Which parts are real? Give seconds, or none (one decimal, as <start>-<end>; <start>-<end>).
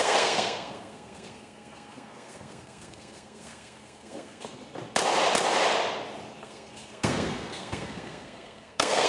4.6-6.4